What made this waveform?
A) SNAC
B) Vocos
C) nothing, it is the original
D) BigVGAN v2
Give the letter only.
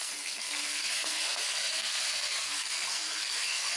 A